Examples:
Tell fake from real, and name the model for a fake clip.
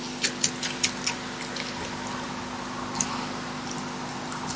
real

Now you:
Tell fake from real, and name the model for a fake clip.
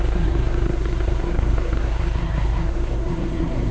fake, codec, SNAC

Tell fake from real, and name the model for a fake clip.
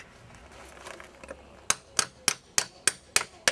real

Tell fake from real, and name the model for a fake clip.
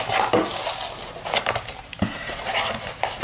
real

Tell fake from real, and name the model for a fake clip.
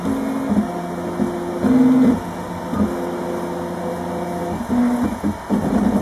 real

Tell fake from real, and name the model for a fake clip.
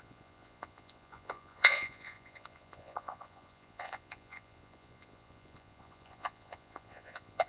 fake, vocoder, Vocos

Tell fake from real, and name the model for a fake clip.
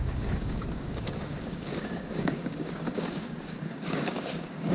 fake, codec, DAC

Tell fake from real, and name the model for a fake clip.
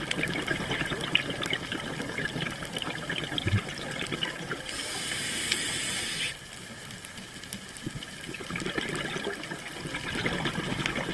real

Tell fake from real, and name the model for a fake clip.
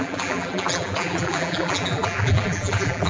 fake, vocoder, BigVGAN v2